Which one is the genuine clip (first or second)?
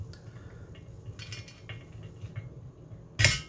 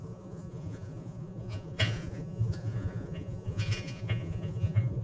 first